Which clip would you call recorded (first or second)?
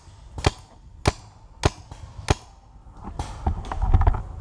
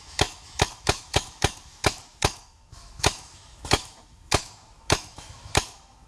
first